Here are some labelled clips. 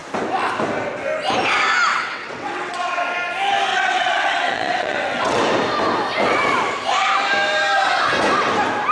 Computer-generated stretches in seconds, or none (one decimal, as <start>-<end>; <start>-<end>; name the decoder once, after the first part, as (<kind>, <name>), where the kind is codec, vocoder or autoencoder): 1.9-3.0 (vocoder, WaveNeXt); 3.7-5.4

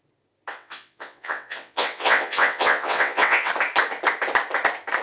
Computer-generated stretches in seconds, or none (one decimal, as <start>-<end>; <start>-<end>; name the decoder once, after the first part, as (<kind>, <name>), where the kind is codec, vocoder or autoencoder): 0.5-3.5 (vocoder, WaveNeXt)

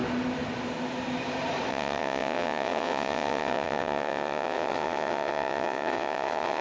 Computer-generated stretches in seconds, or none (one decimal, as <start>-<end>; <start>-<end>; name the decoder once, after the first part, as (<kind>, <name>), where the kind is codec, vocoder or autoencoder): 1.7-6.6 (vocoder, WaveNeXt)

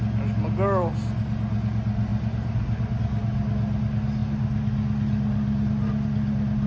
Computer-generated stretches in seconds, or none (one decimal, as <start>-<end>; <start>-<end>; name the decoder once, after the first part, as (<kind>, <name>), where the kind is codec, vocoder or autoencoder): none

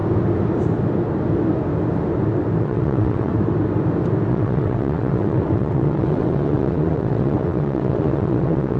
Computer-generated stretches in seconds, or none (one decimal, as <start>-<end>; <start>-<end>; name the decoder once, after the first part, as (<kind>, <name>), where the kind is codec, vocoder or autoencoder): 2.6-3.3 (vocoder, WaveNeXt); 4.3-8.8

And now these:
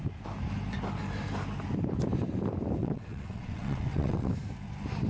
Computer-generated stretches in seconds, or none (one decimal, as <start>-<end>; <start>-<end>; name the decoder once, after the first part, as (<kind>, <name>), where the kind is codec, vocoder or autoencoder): 2.8-4.3 (vocoder, WaveNeXt)

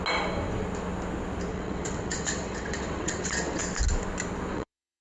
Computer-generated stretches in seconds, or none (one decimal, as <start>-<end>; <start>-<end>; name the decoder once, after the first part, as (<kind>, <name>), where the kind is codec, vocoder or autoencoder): 1.5-3.6 (vocoder, WaveNeXt); 4.5-5.0